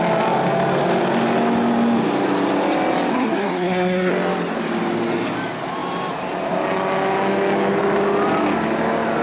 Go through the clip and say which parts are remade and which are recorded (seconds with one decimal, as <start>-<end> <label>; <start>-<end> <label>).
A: 0.0-3.1 recorded; 3.1-4.1 remade; 4.1-9.2 recorded